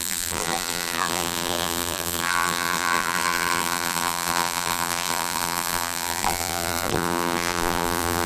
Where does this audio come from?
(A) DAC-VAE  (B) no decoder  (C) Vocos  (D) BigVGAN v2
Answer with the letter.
D